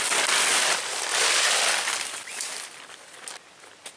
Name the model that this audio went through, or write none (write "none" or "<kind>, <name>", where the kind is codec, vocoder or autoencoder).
none